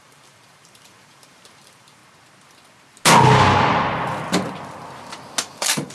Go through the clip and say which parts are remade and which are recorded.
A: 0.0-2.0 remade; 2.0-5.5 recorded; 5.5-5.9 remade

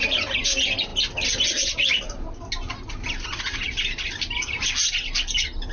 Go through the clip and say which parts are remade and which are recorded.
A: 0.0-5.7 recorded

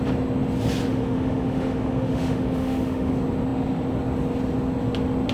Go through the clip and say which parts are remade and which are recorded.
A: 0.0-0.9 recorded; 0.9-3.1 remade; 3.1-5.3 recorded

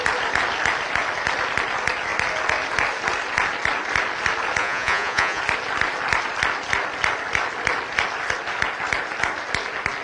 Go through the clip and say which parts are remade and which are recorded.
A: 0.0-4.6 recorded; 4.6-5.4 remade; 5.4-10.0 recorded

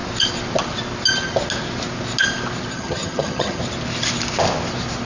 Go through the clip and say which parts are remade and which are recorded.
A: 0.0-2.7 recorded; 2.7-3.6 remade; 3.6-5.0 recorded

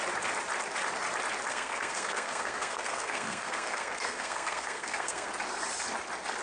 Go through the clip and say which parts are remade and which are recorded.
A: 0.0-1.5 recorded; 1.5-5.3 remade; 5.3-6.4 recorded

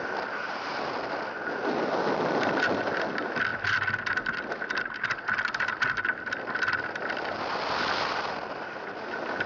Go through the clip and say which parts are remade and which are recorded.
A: 0.0-9.5 recorded

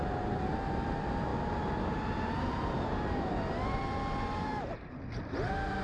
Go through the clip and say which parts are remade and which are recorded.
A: 0.0-5.8 recorded